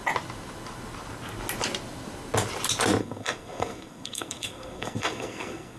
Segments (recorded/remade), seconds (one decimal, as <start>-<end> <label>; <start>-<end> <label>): 0.0-3.0 recorded; 3.0-5.8 remade